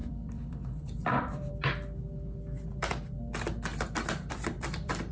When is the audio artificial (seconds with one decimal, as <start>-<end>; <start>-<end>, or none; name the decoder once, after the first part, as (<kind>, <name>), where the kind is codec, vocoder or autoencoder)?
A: 0.0-1.5 (vocoder, BigVGAN v2); 3.7-5.1